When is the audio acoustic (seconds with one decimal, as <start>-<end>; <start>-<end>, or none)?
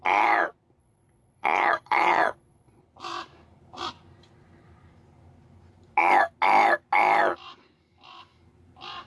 0.0-0.8; 2.8-9.1